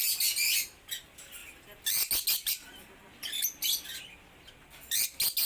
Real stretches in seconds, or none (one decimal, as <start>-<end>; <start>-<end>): 0.0-5.5